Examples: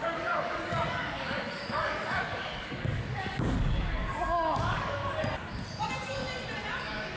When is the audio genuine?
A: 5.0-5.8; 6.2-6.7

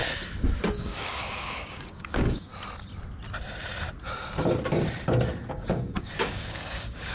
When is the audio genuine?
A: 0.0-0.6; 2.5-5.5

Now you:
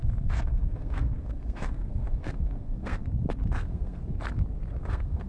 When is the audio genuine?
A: 3.0-3.5; 4.0-4.7